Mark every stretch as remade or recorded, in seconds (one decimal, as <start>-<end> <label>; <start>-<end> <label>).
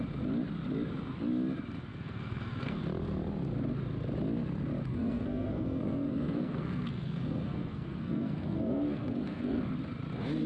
0.0-1.9 recorded; 1.9-2.8 remade; 2.8-4.9 recorded; 4.9-9.6 remade; 9.6-10.5 recorded